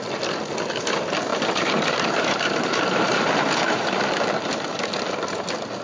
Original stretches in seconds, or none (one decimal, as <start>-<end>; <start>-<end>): 0.0-1.3; 4.8-5.8